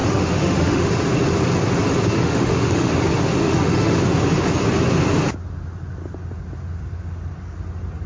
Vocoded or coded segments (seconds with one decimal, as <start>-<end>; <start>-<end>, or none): 0.0-0.9; 2.1-2.9; 3.4-4.0